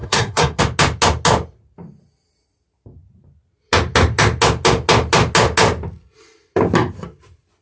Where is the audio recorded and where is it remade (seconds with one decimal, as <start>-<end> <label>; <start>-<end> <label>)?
0.0-0.6 remade; 0.6-7.6 recorded